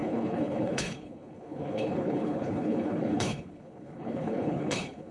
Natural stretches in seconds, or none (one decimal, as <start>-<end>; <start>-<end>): none